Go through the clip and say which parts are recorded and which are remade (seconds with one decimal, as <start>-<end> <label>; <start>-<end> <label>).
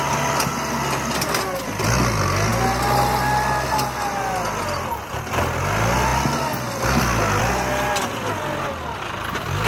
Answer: 0.0-9.7 recorded